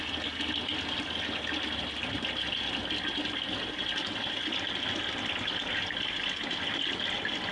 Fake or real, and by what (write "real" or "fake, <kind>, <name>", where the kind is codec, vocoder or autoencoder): real